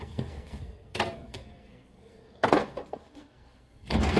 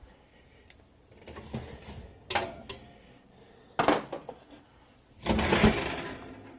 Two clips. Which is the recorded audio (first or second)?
second